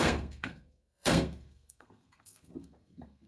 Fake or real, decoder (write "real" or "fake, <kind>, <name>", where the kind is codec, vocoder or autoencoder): fake, codec, SNAC